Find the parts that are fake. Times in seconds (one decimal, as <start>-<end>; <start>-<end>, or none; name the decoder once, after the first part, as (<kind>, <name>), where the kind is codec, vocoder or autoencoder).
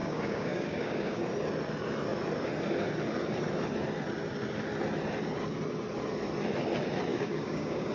0.0-1.2 (codec, DAC); 7.1-7.9